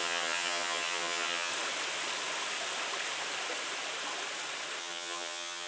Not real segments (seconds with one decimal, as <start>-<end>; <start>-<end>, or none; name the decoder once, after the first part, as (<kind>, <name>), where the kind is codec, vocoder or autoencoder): 0.0-1.5 (vocoder, HiFi-GAN); 4.8-5.7